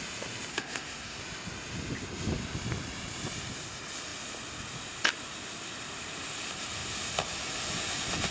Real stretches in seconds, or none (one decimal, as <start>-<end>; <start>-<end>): 0.0-0.5; 1.2-8.3